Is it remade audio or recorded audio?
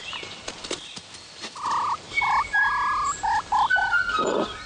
remade